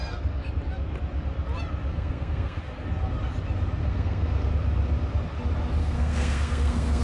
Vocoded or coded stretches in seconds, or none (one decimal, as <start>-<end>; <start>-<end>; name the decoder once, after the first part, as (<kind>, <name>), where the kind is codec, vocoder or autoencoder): 0.0-0.5 (codec, SNAC); 1.9-2.6; 3.8-4.5; 5.8-7.0